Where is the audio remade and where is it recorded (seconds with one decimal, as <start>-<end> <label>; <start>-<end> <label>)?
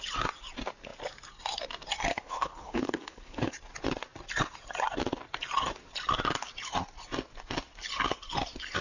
0.0-2.1 recorded; 2.1-3.5 remade; 3.5-8.8 recorded